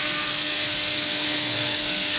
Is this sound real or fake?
fake